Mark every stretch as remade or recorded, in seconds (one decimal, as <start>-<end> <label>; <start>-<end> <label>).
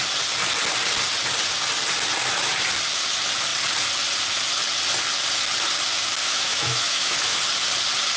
0.0-6.2 recorded; 6.2-7.4 remade; 7.4-8.2 recorded